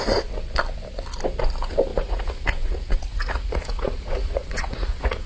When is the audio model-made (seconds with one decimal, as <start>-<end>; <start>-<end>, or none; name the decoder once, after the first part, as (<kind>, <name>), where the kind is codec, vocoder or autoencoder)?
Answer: 1.9-5.3 (vocoder, Vocos)